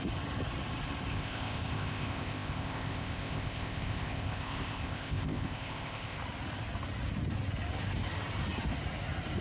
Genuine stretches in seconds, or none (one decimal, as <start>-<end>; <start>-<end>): 0.0-1.1; 6.2-9.4

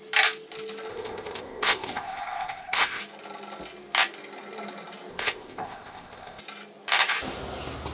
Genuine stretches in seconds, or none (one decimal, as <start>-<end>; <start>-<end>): 0.0-0.9; 3.0-5.1; 6.4-7.9